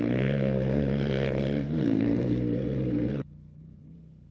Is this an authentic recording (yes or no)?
no